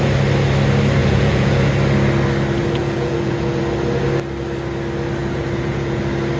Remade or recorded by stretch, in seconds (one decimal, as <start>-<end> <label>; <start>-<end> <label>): 0.0-1.0 recorded; 1.0-1.7 remade; 1.7-2.6 recorded; 2.6-3.6 remade; 3.6-5.2 recorded; 5.2-6.0 remade; 6.0-6.4 recorded